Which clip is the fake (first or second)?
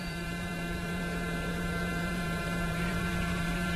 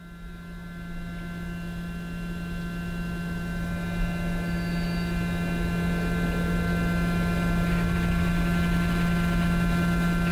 first